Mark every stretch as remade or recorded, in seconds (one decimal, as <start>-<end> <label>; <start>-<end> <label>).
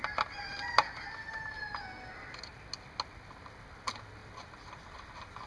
0.0-5.5 recorded